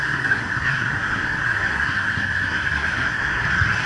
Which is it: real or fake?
fake